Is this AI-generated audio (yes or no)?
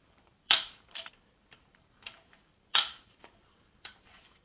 yes